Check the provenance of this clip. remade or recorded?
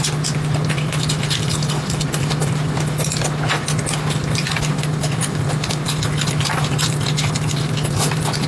recorded